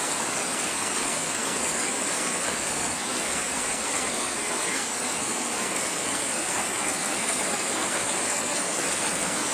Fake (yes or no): yes